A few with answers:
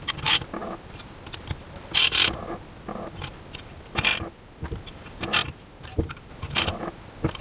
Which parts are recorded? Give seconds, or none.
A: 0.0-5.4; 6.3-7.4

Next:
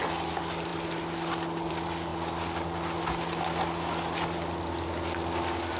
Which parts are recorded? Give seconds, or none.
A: 0.0-5.8

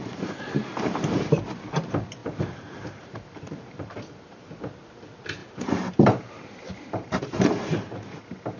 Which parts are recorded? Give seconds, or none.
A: 1.3-2.2; 4.5-5.4; 7.8-8.6